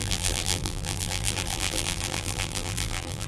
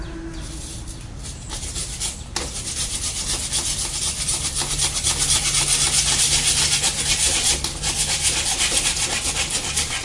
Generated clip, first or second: first